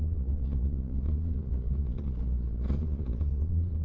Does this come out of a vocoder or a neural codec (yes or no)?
yes